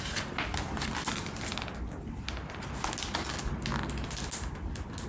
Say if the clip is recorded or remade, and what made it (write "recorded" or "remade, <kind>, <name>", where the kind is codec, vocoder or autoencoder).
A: recorded